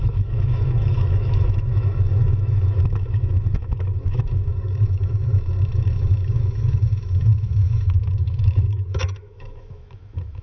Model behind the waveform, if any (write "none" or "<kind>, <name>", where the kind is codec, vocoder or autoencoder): autoencoder, DAC-VAE